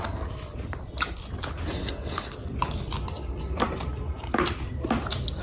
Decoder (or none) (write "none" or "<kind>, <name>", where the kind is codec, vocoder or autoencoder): none